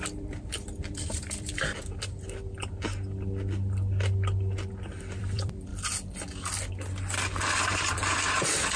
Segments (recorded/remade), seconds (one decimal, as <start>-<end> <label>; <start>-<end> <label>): 0.0-2.6 remade; 2.6-5.2 recorded; 5.2-5.7 remade; 5.7-7.4 recorded; 7.4-8.8 remade